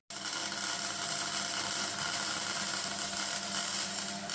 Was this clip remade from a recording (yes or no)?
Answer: no